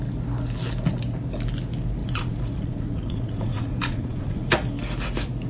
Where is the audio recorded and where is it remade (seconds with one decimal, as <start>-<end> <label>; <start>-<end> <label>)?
0.0-2.0 recorded; 2.0-4.5 remade; 4.5-5.5 recorded